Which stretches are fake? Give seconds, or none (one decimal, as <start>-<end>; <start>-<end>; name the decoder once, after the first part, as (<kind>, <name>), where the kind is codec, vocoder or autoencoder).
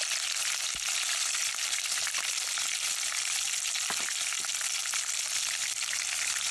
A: none